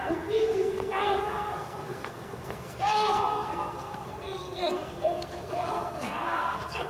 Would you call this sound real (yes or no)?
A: no